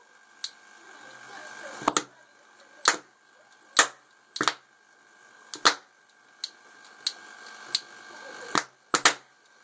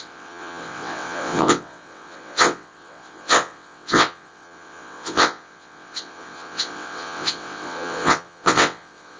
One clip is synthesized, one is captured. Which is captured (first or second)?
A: first